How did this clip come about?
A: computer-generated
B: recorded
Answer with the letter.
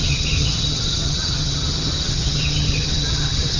A